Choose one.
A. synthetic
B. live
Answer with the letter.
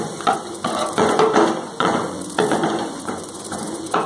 A